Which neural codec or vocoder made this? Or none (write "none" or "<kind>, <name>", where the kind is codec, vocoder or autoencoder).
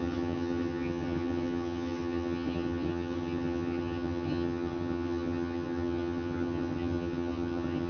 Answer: vocoder, HiFi-GAN